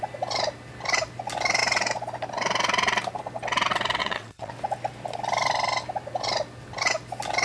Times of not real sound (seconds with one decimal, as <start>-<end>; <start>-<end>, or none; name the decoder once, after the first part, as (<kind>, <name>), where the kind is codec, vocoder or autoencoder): 4.0-4.5 (vocoder, WaveNeXt)